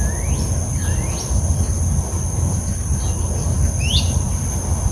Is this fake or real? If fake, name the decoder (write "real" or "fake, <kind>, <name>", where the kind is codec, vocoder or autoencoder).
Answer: real